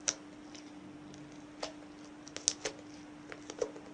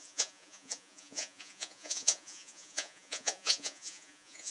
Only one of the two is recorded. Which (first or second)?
first